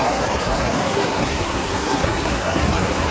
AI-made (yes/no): yes